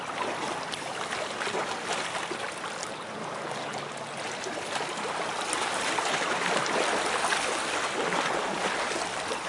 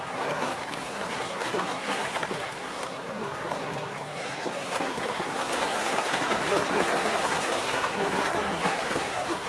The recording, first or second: first